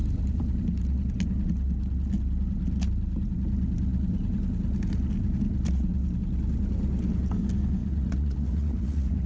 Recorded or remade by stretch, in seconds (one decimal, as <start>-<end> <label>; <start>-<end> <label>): 0.0-7.8 recorded; 7.8-9.3 remade